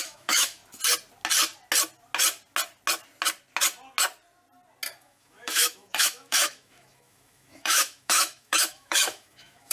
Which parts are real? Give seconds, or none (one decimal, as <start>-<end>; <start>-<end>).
0.6-5.0